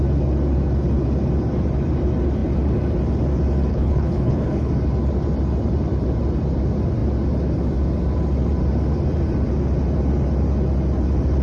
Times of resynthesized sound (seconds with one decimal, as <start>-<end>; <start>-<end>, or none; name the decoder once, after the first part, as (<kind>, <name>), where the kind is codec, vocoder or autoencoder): 3.7-4.7 (codec, HILCodec)